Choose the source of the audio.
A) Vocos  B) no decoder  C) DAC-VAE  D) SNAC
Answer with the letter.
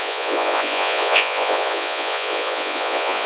A